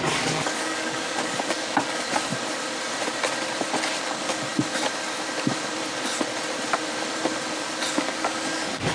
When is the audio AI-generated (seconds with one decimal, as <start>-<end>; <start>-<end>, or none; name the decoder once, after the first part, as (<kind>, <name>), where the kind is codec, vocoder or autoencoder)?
0.0-2.3 (codec, DAC); 4.0-4.5; 7.9-8.9

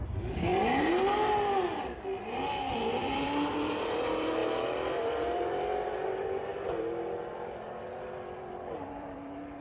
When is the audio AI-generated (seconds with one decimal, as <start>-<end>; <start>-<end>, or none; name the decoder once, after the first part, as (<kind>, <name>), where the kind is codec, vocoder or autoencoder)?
0.0-0.5 (vocoder, BigVGAN v2); 2.7-6.5; 7.3-9.6

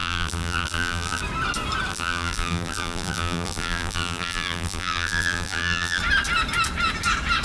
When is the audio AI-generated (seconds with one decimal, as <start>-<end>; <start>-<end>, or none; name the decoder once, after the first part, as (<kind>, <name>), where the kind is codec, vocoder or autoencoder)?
0.0-1.2 (vocoder, BigVGAN v2); 1.9-6.0

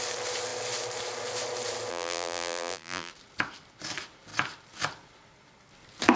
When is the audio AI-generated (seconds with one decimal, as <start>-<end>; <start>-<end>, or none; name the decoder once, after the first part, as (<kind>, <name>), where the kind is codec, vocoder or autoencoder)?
1.9-3.1 (vocoder, BigVGAN v2)